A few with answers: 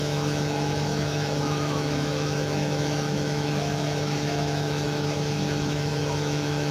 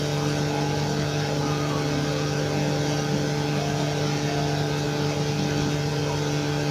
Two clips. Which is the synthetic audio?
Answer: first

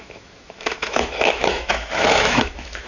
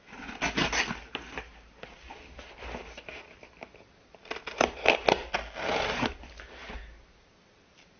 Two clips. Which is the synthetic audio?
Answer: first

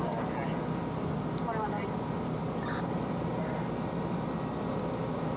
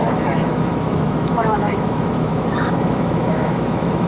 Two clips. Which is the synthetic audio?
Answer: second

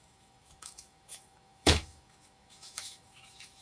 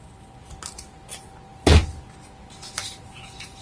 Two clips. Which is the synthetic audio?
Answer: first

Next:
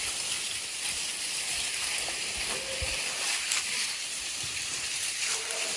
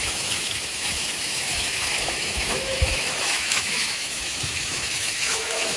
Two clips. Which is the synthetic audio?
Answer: second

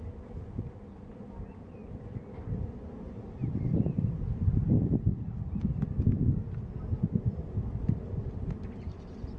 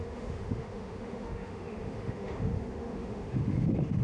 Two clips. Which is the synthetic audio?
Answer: second